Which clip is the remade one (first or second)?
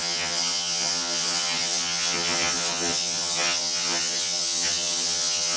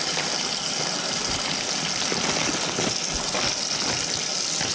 first